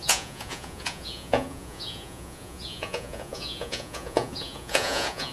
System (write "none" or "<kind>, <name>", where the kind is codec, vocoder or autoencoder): vocoder, Vocos